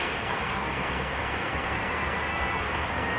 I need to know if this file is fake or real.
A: fake